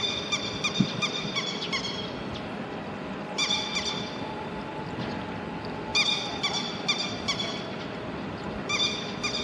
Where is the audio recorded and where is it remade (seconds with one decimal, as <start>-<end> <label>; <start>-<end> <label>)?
0.0-9.4 recorded